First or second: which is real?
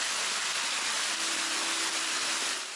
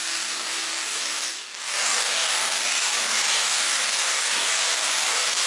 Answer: first